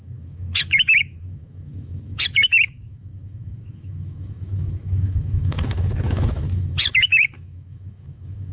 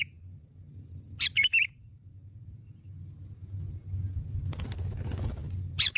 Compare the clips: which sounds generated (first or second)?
first